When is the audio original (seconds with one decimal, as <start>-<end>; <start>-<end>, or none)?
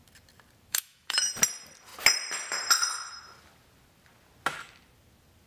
0.0-0.7; 1.3-5.5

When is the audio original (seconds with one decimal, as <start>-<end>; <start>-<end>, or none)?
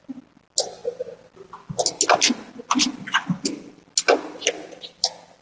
0.0-5.4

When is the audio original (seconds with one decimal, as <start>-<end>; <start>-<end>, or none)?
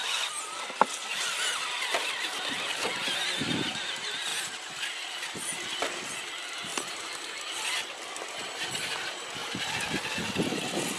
0.0-6.7; 7.4-11.0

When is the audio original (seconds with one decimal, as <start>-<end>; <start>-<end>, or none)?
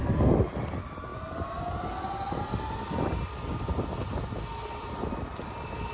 0.0-5.9